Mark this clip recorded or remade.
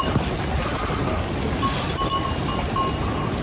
recorded